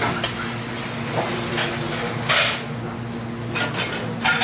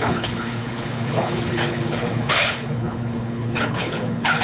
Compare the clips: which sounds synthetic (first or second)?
second